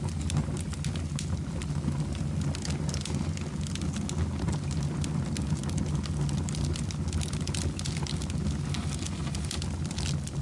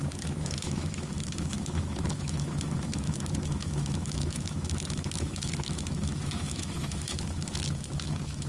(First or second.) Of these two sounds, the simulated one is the second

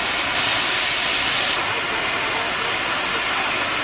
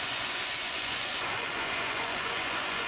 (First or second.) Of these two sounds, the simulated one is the second